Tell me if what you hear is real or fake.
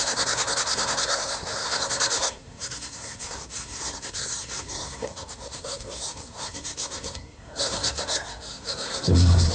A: fake